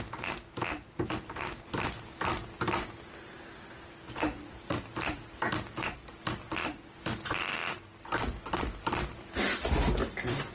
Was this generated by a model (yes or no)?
no